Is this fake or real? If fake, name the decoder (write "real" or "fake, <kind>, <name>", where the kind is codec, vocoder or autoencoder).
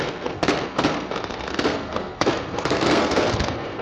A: fake, codec, SNAC